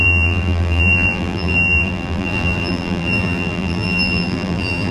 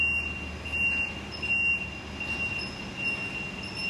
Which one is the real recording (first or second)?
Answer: second